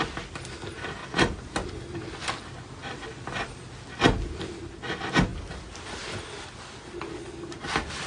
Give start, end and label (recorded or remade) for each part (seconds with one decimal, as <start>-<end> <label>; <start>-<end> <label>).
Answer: 0.0-1.0 recorded; 1.0-2.0 remade; 2.0-8.1 recorded